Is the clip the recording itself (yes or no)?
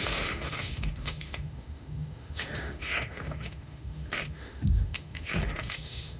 no